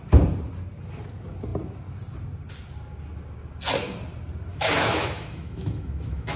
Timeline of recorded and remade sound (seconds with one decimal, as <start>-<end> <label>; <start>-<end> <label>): 0.0-4.5 recorded; 4.5-6.4 remade